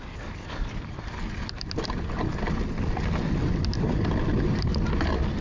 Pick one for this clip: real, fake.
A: real